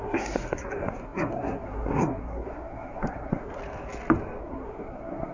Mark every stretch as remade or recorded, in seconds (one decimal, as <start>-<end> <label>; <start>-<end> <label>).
0.0-3.6 remade; 3.6-4.4 recorded; 4.4-5.3 remade